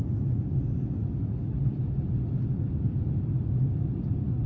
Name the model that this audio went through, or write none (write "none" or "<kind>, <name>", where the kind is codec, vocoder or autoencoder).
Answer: none